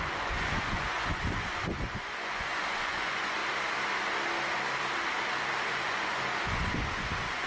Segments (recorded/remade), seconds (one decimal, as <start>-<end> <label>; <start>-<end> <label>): 0.0-3.4 remade; 3.4-5.7 recorded; 5.7-7.5 remade